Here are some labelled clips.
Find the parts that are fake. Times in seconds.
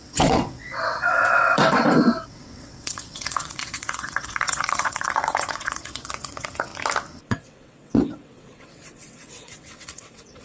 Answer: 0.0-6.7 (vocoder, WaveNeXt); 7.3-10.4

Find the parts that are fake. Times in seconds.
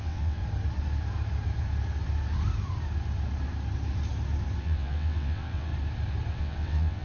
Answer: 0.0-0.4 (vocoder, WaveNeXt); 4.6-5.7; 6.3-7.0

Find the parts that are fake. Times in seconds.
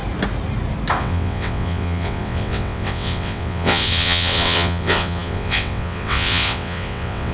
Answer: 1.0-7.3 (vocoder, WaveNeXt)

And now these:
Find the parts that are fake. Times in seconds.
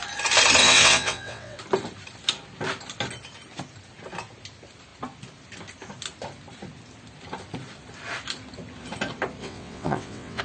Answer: 0.6-1.6 (vocoder, WaveNeXt); 9.4-10.4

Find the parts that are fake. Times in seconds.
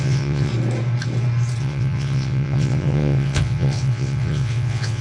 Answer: 0.0-0.5 (vocoder, WaveNeXt); 1.6-5.0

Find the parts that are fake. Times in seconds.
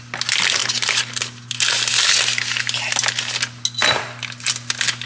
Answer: none